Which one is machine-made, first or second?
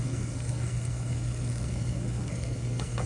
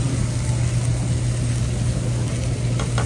first